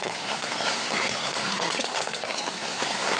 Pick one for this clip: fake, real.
fake